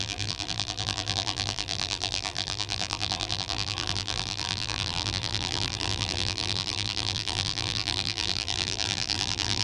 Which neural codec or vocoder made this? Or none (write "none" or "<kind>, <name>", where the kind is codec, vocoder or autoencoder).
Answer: vocoder, BigVGAN v2